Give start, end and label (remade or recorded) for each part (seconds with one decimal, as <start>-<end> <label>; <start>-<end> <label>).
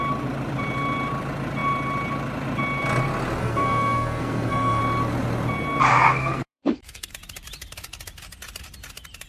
0.0-3.4 recorded; 3.4-4.8 remade; 4.8-5.9 recorded; 5.9-7.1 remade; 7.1-9.3 recorded